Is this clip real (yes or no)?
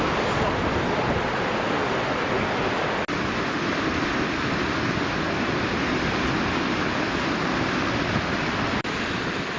yes